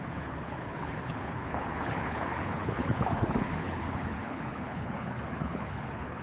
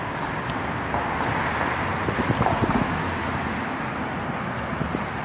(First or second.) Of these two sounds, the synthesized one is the first